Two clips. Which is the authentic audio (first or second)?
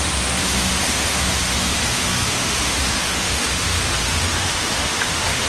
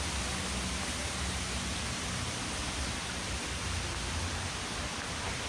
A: second